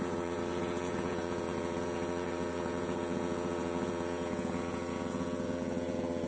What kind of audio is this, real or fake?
fake